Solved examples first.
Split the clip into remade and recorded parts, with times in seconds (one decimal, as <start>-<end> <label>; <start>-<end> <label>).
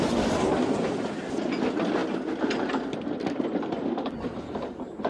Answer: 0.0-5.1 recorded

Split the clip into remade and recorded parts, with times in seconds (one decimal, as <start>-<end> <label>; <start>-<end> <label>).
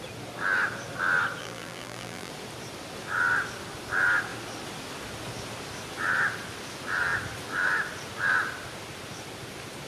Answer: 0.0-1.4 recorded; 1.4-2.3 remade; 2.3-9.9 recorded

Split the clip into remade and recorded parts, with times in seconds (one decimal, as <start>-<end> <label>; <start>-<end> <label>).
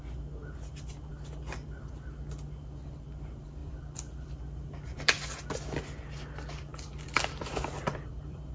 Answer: 0.0-3.6 recorded; 3.6-4.3 remade; 4.3-6.7 recorded; 6.7-8.5 remade